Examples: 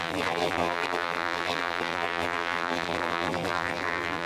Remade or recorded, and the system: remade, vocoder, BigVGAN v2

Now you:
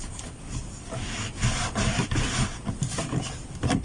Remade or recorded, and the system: recorded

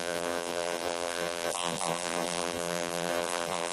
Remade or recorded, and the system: remade, vocoder, BigVGAN v2